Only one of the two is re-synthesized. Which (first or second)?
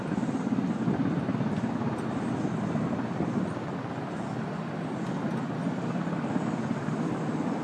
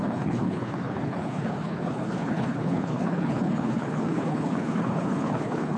second